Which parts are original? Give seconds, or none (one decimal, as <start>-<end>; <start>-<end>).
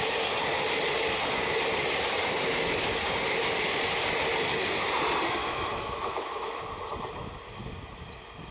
0.0-5.4; 6.6-8.5